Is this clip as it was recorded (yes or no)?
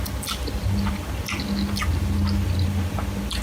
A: yes